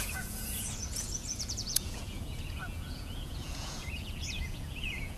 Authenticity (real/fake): fake